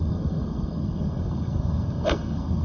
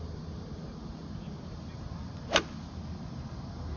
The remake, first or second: first